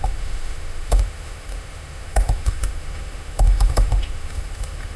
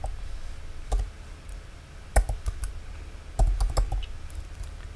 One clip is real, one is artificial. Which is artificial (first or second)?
first